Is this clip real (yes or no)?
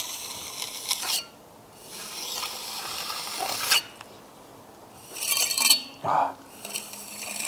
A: yes